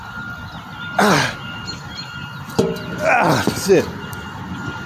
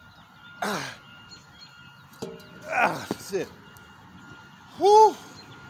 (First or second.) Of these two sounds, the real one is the second